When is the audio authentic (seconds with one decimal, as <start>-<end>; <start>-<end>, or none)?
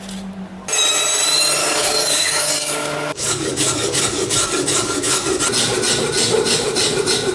0.0-1.6; 5.4-7.3